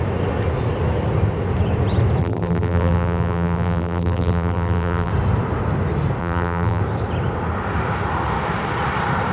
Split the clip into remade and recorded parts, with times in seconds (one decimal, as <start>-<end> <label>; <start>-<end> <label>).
0.0-2.2 recorded; 2.2-5.1 remade; 5.1-6.2 recorded; 6.2-6.8 remade; 6.8-9.3 recorded